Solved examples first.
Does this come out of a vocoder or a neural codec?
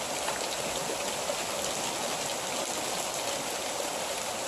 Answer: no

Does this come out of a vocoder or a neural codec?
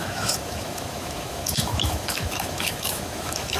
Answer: yes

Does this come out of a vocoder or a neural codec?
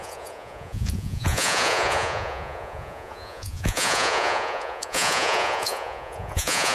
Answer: yes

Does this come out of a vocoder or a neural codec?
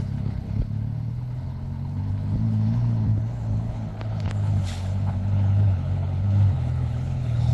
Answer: yes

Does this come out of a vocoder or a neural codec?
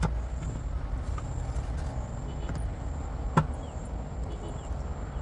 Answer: no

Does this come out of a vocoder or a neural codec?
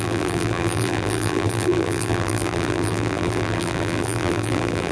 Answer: yes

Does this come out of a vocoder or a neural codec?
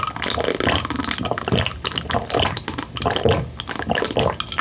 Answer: no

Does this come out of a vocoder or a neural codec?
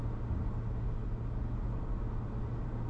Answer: no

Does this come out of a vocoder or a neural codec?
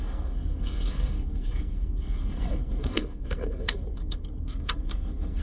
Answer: yes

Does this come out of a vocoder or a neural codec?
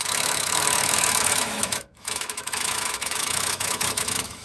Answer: yes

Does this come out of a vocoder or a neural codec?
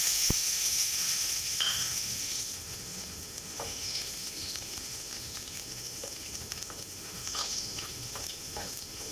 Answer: yes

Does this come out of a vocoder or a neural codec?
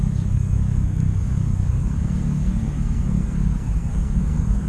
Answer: yes